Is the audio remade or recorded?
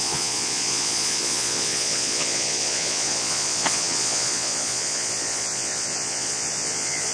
remade